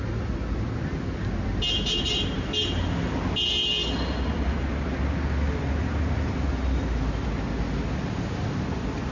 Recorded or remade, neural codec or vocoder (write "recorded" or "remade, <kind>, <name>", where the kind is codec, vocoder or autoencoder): recorded